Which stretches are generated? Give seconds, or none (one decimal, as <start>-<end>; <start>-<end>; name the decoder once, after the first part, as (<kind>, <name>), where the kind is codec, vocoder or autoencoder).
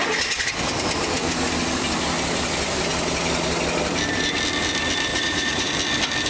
5.1-5.7 (vocoder, Vocos)